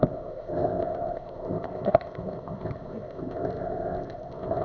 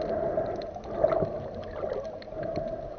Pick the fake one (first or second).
first